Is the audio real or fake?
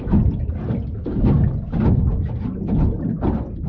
real